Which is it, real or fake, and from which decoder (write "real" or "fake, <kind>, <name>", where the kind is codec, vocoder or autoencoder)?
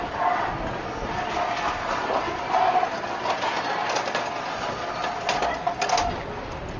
real